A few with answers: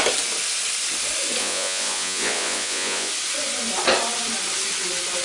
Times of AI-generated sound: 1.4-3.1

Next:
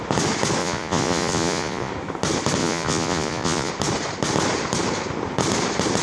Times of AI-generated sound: 0.6-1.9; 2.6-3.7

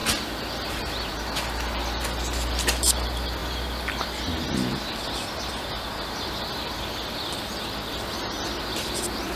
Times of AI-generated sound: none

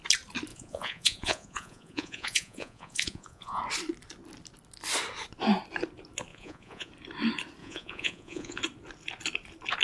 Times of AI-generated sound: 0.5-3.6; 6.3-6.9; 7.6-8.6

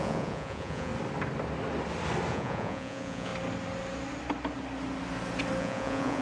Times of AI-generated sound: 0.0-0.9; 2.3-3.3; 5.6-6.2

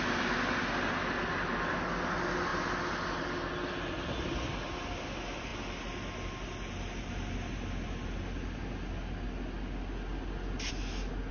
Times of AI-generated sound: none

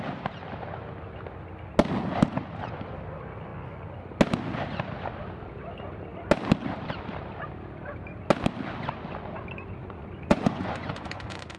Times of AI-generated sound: 9.8-11.6

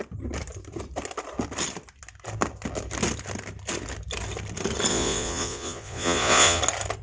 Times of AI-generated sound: 4.9-6.6